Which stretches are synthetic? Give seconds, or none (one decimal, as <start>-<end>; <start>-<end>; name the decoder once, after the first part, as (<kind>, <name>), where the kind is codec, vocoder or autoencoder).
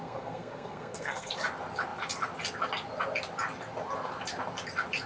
0.0-1.3 (codec, SNAC)